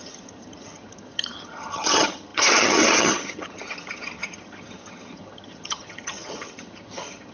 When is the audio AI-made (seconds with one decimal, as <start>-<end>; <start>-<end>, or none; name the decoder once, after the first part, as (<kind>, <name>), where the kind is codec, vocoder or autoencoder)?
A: 0.0-7.3 (vocoder, HiFi-GAN)